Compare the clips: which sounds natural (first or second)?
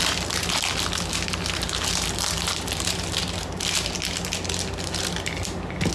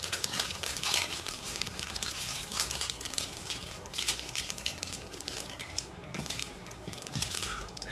first